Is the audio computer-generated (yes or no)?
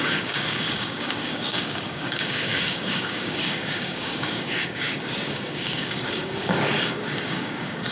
yes